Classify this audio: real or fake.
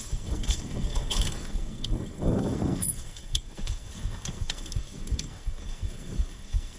fake